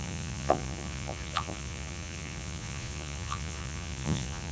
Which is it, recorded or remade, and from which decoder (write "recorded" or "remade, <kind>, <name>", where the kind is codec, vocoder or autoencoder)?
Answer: remade, vocoder, Vocos